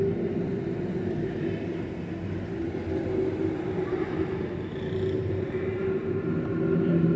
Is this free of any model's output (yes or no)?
yes